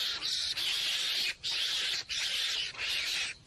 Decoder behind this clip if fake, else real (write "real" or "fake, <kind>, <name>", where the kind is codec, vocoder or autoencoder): fake, vocoder, BigVGAN v2